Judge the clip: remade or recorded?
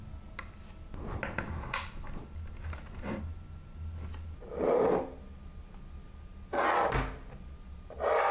recorded